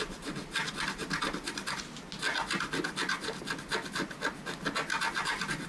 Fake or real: real